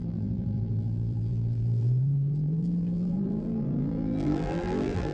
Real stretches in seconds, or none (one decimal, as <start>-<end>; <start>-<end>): none